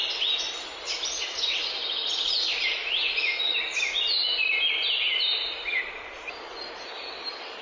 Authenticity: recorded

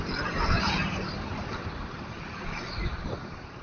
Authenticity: remade